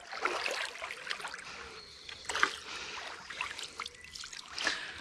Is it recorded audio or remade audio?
recorded